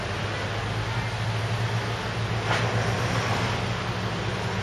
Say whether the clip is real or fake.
real